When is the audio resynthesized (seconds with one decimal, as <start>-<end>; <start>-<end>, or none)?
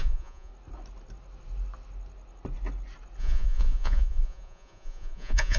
0.0-0.5; 3.2-5.6